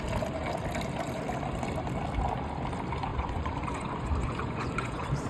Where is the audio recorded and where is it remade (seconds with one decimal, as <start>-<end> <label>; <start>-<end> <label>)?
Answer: 0.0-3.1 recorded; 3.1-5.3 remade

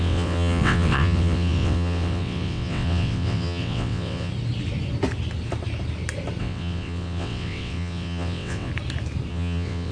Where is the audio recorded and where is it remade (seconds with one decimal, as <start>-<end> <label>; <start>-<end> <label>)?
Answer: 0.0-4.3 remade; 4.3-6.4 recorded; 6.4-8.7 remade; 8.7-9.3 recorded; 9.3-9.9 remade

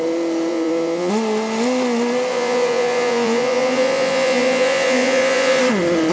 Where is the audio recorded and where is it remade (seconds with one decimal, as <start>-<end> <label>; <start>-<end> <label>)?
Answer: 0.0-0.5 recorded; 0.5-1.1 remade; 1.1-2.3 recorded; 2.3-5.6 remade; 5.6-6.1 recorded